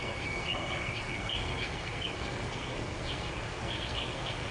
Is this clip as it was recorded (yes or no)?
no